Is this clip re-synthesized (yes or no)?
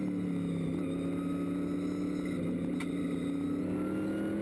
no